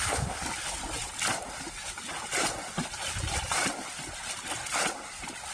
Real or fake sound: real